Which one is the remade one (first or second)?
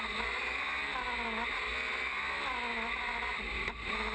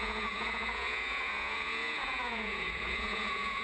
second